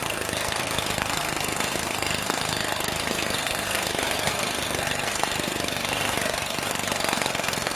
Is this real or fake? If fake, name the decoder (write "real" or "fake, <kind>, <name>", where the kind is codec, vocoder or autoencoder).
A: fake, codec, SNAC